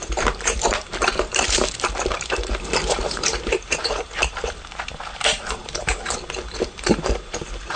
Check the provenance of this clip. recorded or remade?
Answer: remade